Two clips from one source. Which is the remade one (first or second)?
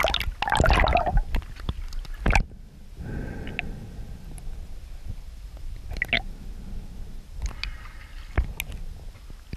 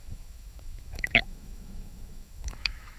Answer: second